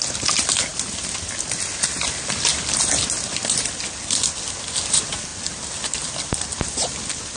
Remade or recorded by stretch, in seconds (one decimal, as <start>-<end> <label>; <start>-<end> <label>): 0.0-7.4 recorded

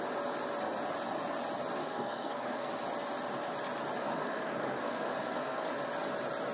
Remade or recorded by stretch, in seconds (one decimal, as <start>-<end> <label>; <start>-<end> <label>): 0.0-1.8 recorded; 1.8-2.7 remade; 2.7-4.0 recorded; 4.0-5.7 remade; 5.7-6.5 recorded

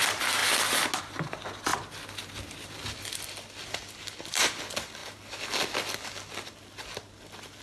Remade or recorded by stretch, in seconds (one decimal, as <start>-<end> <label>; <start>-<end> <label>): 0.0-7.6 recorded

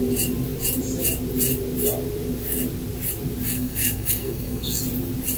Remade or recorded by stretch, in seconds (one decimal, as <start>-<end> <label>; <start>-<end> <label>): 0.0-3.5 recorded; 3.5-4.8 remade; 4.8-5.4 recorded

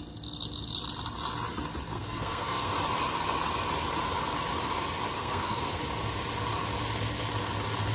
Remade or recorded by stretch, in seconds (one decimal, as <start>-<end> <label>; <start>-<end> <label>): 0.0-1.9 recorded; 1.9-2.7 remade; 2.7-5.2 recorded; 5.2-5.8 remade; 5.8-7.9 recorded